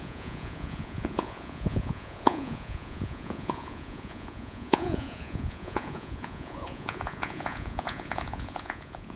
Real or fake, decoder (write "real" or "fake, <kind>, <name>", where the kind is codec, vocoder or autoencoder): fake, vocoder, Vocos